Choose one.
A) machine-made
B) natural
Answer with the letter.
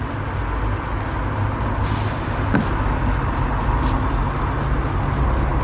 B